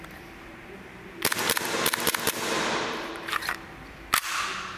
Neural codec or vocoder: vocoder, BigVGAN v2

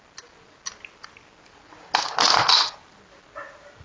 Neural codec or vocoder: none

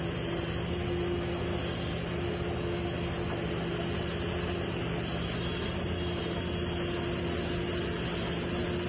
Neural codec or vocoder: none